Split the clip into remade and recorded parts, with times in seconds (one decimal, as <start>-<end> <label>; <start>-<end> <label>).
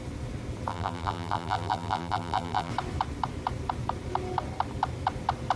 0.0-0.7 recorded; 0.7-2.7 remade; 2.7-5.6 recorded